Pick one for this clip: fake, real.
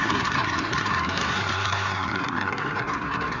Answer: fake